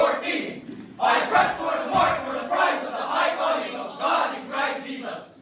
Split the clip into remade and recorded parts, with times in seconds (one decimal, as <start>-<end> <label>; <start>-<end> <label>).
0.0-3.8 recorded; 3.8-5.4 remade